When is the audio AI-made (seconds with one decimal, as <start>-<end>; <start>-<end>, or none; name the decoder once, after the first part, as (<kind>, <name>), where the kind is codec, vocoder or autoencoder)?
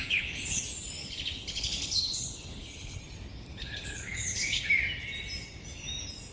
0.0-0.6 (codec, HILCodec); 1.0-3.0; 3.5-4.7